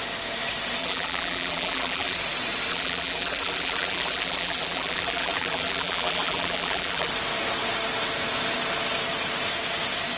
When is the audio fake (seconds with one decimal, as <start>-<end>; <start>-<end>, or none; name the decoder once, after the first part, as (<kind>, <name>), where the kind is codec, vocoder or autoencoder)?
0.8-2.2 (vocoder, BigVGAN v2); 2.7-7.1